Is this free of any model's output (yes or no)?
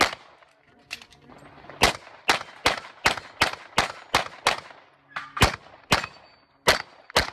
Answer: yes